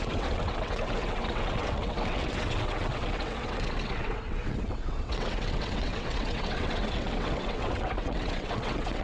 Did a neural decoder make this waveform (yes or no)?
yes